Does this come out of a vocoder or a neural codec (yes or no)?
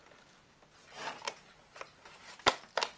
no